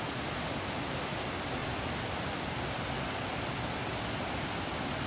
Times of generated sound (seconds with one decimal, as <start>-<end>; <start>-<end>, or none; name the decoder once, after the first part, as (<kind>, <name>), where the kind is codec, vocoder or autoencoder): 1.6-5.1 (vocoder, BigVGAN v2)